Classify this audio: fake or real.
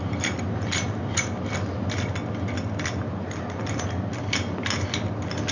real